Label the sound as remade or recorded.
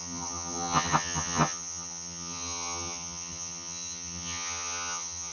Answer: remade